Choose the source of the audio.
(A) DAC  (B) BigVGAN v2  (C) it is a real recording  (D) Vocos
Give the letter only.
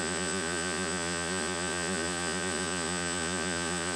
D